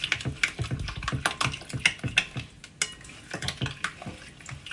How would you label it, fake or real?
real